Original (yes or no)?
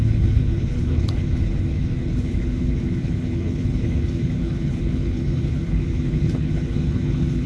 no